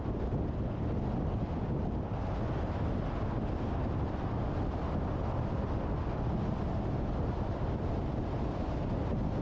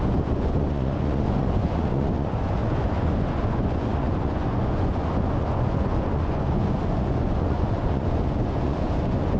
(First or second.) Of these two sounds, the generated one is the second